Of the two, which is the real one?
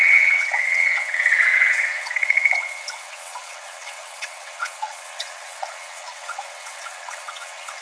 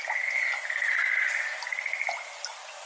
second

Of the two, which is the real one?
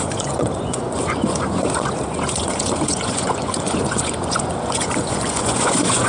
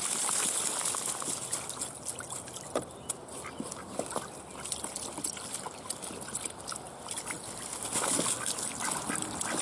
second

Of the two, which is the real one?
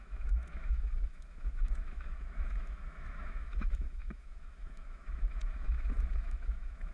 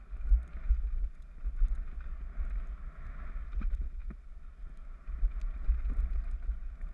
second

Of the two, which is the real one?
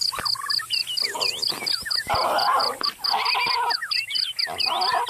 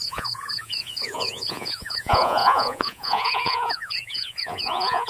first